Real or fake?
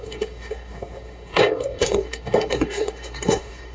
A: fake